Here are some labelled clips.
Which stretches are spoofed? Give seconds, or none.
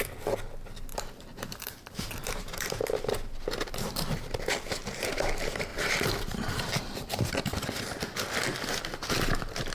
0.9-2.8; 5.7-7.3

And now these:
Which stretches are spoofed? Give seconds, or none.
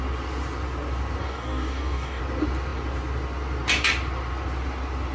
1.2-2.2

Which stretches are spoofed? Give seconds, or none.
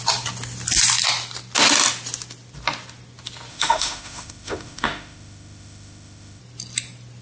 3.5-6.4